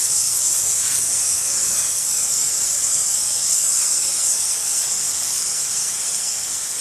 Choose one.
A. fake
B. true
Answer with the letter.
A